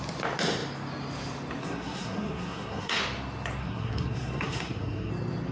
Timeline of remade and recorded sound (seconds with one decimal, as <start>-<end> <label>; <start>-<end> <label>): 0.0-1.6 recorded; 1.6-3.0 remade; 3.0-3.6 recorded; 3.6-5.1 remade; 5.1-5.5 recorded